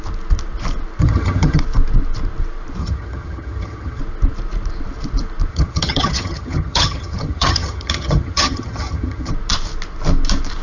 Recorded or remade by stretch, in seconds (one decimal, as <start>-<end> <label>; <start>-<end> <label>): 0.0-1.0 recorded; 1.0-1.6 remade; 1.6-2.8 recorded; 2.8-4.0 remade; 4.0-5.5 recorded; 5.5-9.3 remade; 9.3-10.6 recorded